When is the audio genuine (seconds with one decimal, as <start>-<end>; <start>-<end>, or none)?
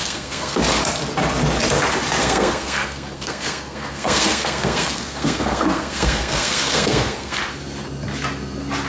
0.6-2.2; 7.4-8.9